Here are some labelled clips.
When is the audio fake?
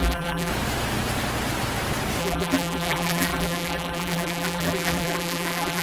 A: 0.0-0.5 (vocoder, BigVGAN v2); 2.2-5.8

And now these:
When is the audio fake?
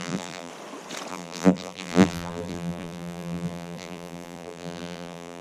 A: 0.0-0.5 (vocoder, BigVGAN v2); 1.1-5.4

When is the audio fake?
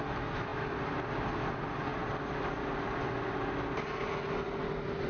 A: none